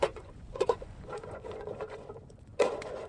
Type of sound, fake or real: fake